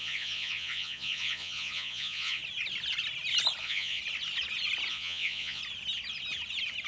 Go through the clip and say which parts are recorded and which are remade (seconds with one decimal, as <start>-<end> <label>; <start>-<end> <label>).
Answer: 0.0-2.4 remade; 2.4-3.6 recorded; 3.6-4.0 remade; 4.0-4.9 recorded; 4.9-5.6 remade; 5.6-6.9 recorded